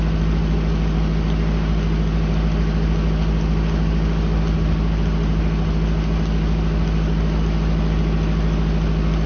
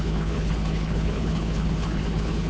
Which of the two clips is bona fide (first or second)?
first